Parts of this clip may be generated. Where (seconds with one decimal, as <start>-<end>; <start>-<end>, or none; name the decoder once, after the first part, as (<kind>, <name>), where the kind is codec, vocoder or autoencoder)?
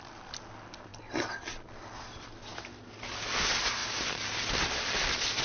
3.8-5.4 (vocoder, BigVGAN v2)